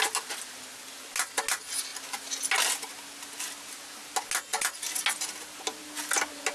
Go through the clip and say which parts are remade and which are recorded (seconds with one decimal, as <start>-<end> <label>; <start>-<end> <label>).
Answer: 0.0-6.5 recorded